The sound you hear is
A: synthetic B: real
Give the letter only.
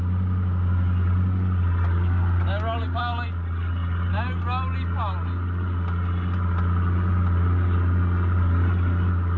B